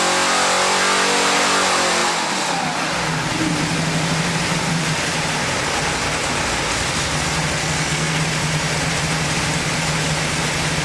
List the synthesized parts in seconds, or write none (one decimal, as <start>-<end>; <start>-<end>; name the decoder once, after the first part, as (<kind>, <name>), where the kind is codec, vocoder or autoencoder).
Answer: 7.6-8.2 (codec, SNAC)